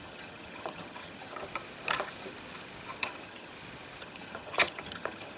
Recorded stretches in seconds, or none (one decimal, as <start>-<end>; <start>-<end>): 1.4-3.0; 3.5-4.0